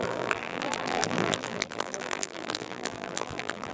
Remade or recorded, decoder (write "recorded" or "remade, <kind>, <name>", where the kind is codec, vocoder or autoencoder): remade, vocoder, BigVGAN v2